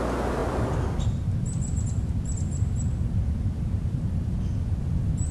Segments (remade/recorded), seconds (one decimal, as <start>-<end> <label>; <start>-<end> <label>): 0.0-5.3 recorded